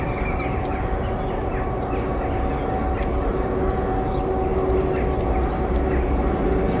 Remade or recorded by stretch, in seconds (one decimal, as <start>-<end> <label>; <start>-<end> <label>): 0.0-6.8 recorded